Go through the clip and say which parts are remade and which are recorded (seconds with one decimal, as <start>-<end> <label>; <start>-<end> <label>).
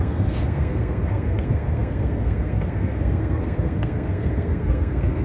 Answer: 0.0-5.2 remade